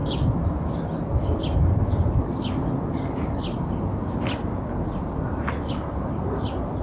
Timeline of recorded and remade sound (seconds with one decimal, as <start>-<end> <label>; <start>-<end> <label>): 0.0-6.8 recorded